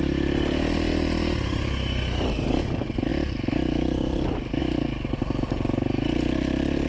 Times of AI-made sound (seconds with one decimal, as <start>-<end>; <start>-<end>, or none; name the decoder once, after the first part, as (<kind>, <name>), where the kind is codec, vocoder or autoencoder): none

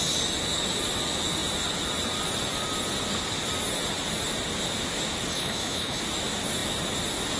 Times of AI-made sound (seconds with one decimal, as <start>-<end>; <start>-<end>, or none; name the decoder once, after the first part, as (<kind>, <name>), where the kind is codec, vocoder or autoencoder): 5.3-6.0 (autoencoder, DAC-VAE)

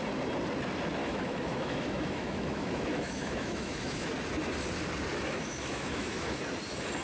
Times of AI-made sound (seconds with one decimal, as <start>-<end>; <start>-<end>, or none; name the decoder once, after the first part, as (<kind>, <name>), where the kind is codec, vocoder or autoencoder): 1.0-4.1 (autoencoder, DAC-VAE); 5.1-6.5

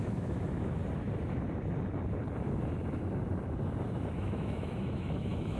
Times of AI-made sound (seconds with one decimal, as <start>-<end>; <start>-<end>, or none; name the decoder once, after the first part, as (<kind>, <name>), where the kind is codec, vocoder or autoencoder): 0.0-0.8 (autoencoder, DAC-VAE); 4.2-5.6

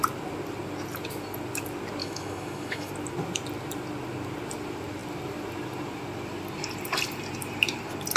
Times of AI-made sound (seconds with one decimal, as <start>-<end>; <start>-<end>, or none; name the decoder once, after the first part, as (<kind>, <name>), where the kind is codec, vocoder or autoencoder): 2.0-2.9 (autoencoder, DAC-VAE)